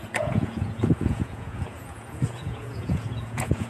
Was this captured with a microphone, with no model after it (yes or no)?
no